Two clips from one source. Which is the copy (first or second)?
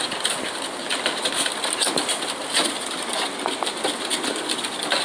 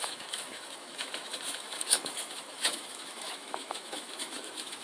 second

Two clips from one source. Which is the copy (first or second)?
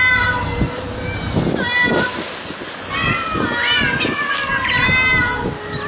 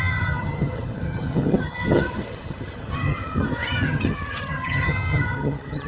second